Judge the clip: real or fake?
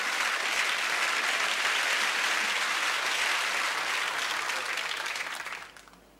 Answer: real